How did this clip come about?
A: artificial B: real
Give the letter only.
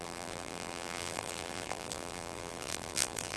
A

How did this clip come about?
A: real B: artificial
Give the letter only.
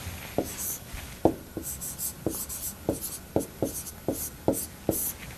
A